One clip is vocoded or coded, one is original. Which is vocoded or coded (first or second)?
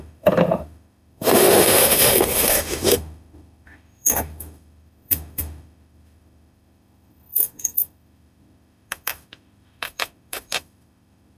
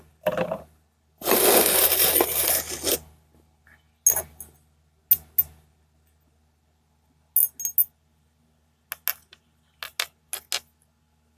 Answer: first